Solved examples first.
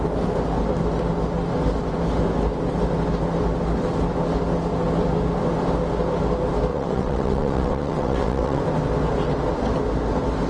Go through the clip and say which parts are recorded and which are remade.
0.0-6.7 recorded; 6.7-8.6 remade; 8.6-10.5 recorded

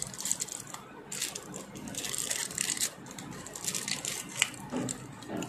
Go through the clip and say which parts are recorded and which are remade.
0.0-2.4 recorded; 2.4-3.0 remade; 3.0-5.5 recorded

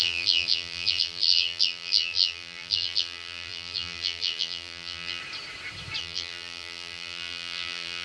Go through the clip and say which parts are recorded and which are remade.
0.0-5.2 remade; 5.2-6.0 recorded; 6.0-8.0 remade

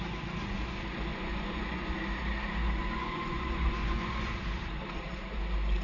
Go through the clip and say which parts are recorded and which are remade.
0.0-1.1 recorded; 1.1-1.9 remade; 1.9-2.8 recorded; 2.8-4.3 remade; 4.3-5.8 recorded